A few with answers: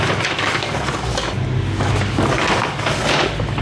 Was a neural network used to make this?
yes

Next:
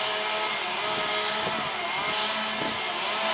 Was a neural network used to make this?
no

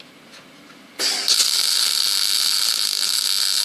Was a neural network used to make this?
no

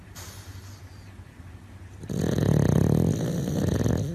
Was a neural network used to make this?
no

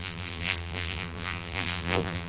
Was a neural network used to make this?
yes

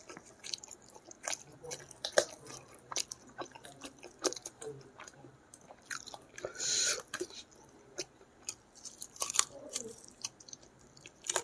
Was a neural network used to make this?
yes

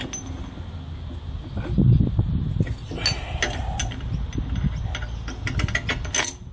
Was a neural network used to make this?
no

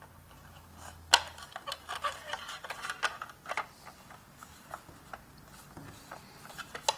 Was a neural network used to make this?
no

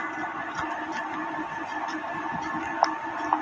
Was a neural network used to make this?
no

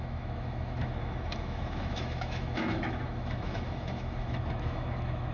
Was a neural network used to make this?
yes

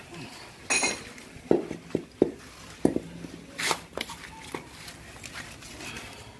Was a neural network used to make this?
no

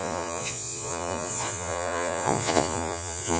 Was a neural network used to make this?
yes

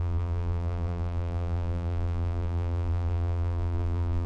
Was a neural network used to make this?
yes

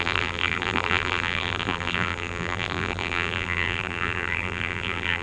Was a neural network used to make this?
yes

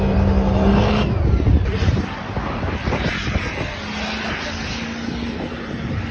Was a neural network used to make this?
no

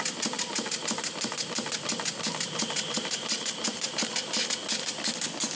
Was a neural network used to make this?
no